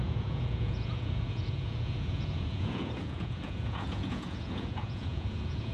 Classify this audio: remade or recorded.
remade